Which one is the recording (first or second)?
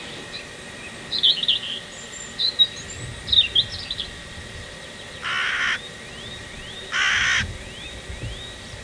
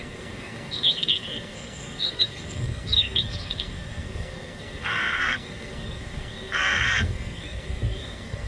first